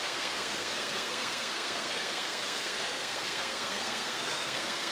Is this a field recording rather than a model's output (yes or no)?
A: no